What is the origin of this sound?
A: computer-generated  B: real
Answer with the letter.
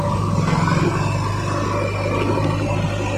B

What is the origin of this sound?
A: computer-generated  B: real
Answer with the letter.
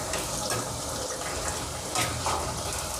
B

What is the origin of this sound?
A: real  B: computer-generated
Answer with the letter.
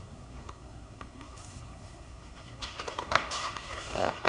B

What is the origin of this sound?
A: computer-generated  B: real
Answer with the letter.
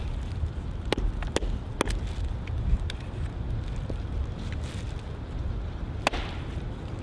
B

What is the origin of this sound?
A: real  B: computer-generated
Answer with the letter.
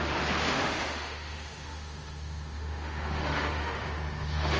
B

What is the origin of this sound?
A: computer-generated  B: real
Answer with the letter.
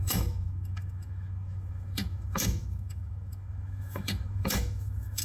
A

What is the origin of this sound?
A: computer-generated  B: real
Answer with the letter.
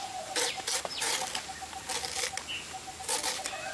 B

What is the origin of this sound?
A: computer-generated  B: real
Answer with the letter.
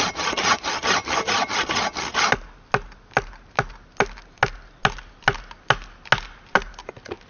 B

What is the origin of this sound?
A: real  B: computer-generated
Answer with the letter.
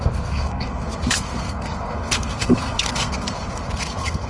B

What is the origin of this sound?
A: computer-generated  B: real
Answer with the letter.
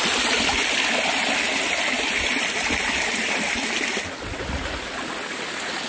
B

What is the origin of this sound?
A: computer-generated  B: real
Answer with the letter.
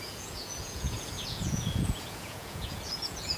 A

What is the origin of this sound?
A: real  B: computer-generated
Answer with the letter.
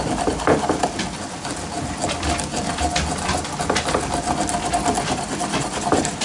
A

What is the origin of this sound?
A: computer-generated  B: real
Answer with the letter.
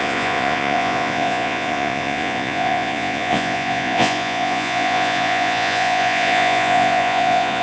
A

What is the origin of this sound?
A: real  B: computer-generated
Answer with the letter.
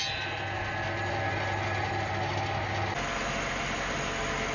A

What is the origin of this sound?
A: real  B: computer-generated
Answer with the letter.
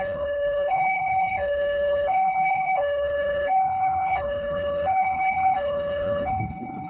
B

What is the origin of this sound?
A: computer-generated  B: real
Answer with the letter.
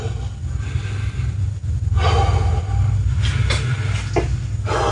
B